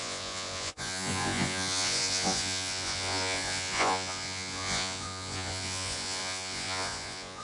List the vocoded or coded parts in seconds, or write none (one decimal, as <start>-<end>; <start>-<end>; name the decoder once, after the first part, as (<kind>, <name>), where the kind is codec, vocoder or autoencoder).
0.0-7.4 (vocoder, Vocos)